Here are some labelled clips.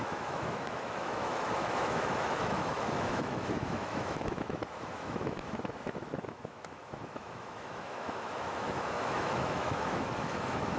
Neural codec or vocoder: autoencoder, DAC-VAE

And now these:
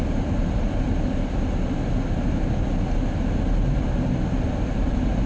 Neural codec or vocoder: none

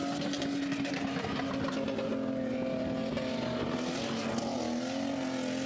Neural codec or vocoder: none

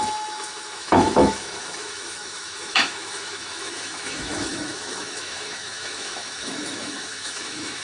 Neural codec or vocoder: autoencoder, DAC-VAE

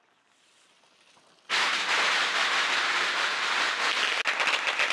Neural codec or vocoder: none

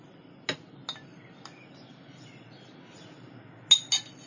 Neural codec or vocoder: none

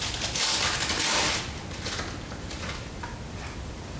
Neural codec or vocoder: none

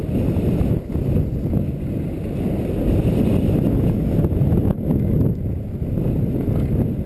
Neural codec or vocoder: none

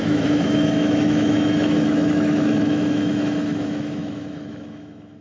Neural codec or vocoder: autoencoder, DAC-VAE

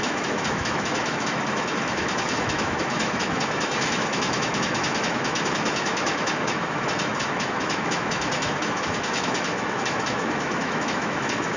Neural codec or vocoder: autoencoder, DAC-VAE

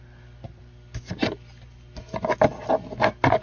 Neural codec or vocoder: none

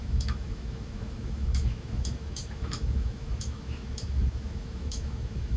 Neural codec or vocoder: autoencoder, DAC-VAE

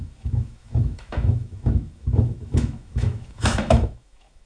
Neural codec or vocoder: autoencoder, DAC-VAE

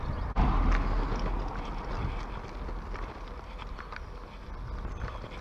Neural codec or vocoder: none